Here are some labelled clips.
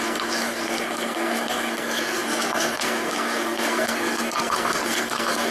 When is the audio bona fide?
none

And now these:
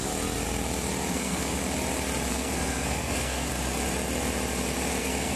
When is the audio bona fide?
0.0-1.1; 1.6-2.3; 3.5-5.0

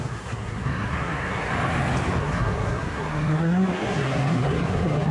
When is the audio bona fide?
1.5-2.2

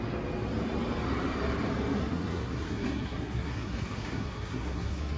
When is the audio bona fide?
0.0-2.0